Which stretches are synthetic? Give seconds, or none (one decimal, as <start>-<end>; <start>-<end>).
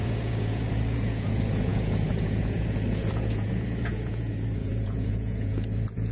0.0-6.1